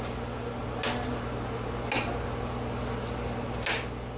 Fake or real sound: real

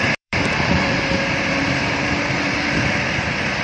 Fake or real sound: fake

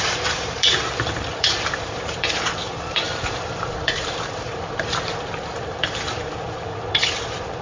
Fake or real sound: fake